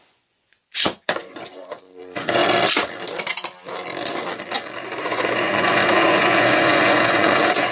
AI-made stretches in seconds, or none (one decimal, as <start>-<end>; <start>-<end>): 0.0-2.4; 4.8-7.7

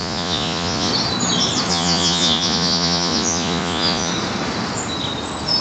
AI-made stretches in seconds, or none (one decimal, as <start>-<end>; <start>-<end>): 0.0-0.9; 1.7-4.1

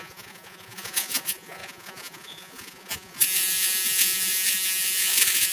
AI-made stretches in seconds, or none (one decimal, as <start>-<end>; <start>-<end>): 0.0-5.5

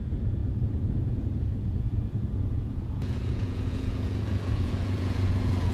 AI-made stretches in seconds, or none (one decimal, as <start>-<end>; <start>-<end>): 0.0-5.7

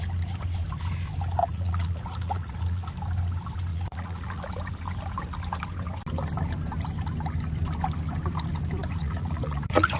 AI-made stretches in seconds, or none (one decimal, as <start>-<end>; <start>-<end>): 1.4-2.9; 3.7-4.4; 9.0-10.0

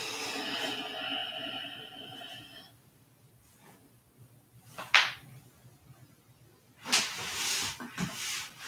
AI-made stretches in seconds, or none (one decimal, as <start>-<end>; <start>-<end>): none